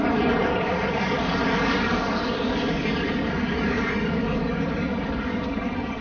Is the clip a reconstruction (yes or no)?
yes